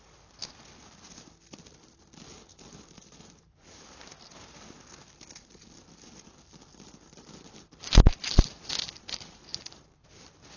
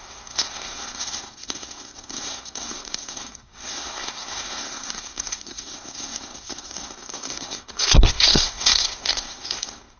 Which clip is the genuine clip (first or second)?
first